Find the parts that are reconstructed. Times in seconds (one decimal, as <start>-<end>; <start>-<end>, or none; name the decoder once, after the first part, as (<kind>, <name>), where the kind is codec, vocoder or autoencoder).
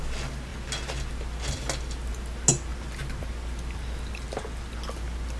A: none